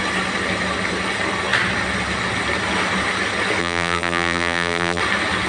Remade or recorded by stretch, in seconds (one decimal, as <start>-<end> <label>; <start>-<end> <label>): 0.0-3.6 recorded; 3.6-5.0 remade; 5.0-5.5 recorded